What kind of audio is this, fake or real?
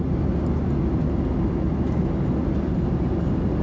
real